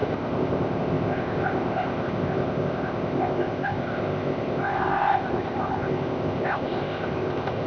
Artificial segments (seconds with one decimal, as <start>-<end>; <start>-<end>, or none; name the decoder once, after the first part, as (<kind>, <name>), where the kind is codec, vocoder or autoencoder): 0.0-7.7 (codec, ZipCodec)